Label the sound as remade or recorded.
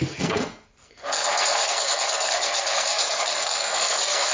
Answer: remade